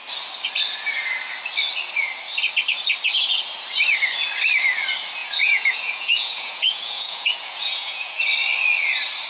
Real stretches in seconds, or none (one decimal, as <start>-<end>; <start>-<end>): 0.0-5.2; 8.2-9.3